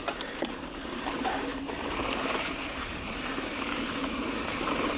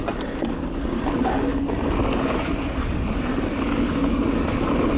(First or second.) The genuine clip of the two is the second